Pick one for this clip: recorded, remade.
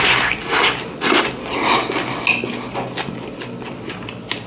recorded